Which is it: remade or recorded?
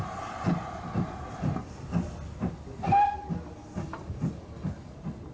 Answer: recorded